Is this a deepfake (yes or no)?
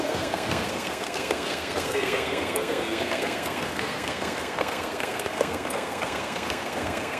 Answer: yes